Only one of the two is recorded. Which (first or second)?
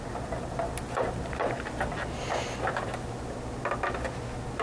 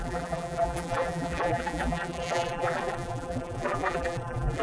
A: first